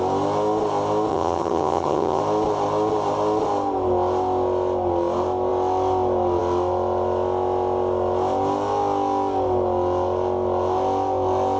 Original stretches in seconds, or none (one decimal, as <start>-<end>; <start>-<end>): 0.0-1.1; 2.2-11.6